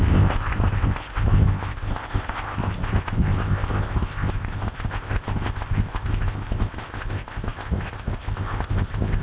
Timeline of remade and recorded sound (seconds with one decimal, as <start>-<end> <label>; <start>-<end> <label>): 0.0-9.2 remade